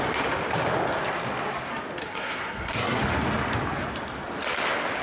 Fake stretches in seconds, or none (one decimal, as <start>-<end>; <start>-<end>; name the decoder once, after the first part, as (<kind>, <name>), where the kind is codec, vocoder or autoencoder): 2.0-3.0 (codec, SNAC)